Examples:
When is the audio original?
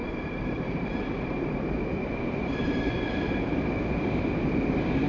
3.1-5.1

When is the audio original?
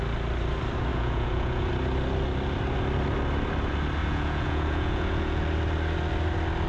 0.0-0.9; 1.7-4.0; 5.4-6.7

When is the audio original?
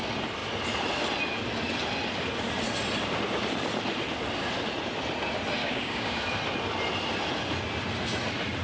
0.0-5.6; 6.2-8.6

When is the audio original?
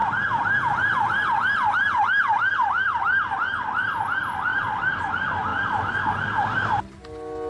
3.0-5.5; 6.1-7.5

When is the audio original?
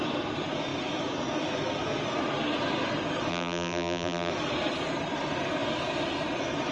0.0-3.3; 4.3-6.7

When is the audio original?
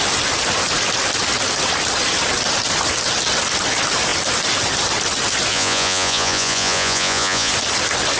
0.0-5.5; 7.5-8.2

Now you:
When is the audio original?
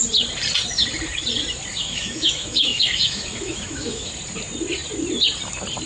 0.0-1.8; 4.1-5.9